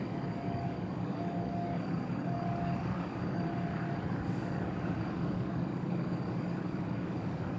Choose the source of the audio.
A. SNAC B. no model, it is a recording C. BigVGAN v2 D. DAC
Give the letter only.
D